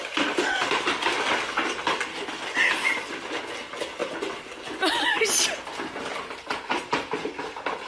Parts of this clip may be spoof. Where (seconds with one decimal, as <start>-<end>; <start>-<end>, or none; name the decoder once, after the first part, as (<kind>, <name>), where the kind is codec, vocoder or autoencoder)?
none